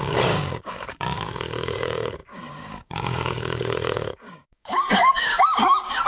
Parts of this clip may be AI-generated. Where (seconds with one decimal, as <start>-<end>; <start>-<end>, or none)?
0.0-6.1